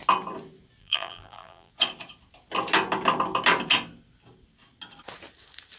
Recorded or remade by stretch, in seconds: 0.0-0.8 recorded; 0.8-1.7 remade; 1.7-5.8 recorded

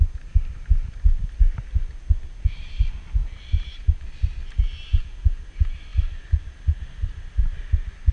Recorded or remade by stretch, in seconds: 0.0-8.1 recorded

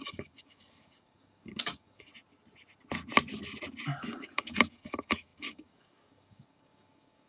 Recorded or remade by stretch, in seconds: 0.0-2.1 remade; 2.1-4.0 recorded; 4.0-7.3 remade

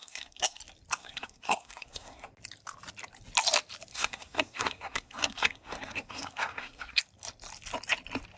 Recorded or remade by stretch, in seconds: 0.0-0.6 remade; 0.6-1.0 recorded; 1.0-2.3 remade; 2.3-3.9 recorded; 3.9-7.0 remade; 7.0-8.4 recorded

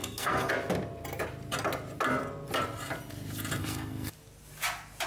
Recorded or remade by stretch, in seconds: 0.0-0.5 remade; 0.5-3.6 recorded; 3.6-4.1 remade; 4.1-5.1 recorded

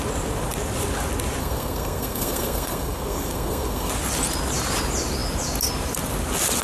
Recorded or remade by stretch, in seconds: 0.0-1.4 recorded; 1.4-3.9 remade; 3.9-6.6 recorded